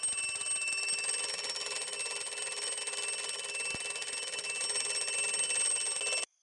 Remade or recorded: recorded